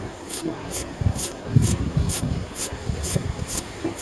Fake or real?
fake